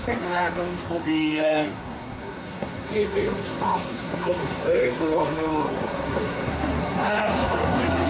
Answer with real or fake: fake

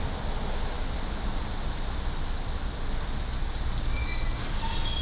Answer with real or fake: real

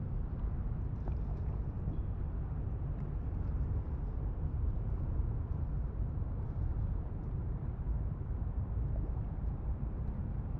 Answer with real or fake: fake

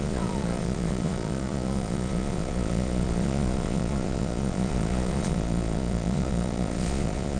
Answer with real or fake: fake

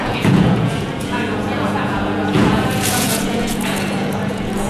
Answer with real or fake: fake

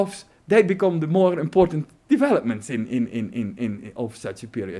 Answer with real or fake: real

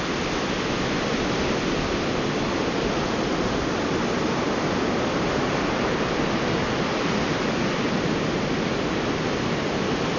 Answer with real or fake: real